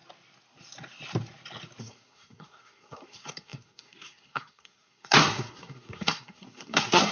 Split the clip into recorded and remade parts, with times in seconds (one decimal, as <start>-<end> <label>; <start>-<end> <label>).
0.0-1.8 recorded; 1.8-7.1 remade